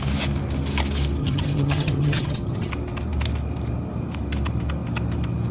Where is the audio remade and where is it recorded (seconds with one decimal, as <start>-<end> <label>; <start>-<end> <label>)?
0.0-1.2 recorded; 1.2-2.7 remade; 2.7-5.5 recorded